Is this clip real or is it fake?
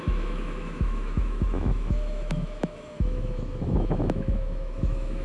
fake